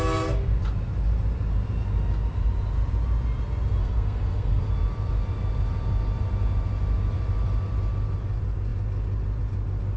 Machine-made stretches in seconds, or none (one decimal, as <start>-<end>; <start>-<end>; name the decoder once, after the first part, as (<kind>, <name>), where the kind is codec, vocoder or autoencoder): 3.8-4.6 (codec, SNAC)